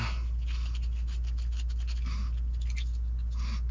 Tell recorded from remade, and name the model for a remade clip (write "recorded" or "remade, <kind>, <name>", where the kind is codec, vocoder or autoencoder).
recorded